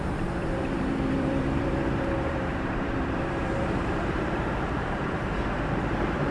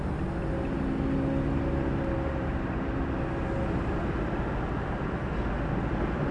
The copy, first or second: first